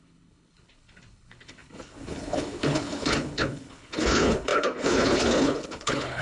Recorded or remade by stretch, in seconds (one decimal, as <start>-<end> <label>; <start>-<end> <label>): 0.0-6.2 remade